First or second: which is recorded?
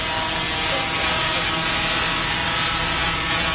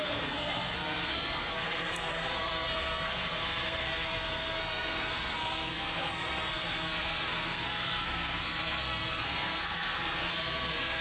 first